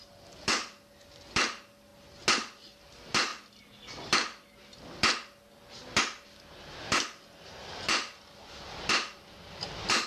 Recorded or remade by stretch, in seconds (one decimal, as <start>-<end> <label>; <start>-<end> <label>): 0.0-1.9 remade; 1.9-2.8 recorded; 2.8-3.3 remade; 3.3-6.0 recorded; 6.0-10.1 remade